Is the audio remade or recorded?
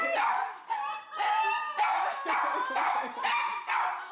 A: recorded